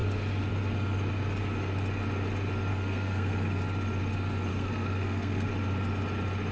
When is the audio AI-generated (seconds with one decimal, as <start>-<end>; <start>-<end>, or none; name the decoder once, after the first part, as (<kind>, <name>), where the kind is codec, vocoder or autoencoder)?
2.7-3.6 (codec, SNAC); 4.5-5.5